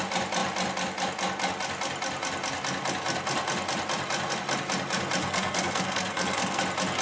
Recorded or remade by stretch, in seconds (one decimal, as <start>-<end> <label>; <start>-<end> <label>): 0.0-5.2 recorded; 5.2-6.6 remade; 6.6-7.0 recorded